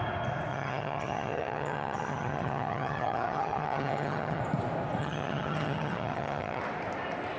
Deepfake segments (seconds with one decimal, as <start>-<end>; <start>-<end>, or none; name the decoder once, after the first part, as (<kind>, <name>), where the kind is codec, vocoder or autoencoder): 0.5-4.4 (vocoder, HiFi-GAN); 5.0-6.6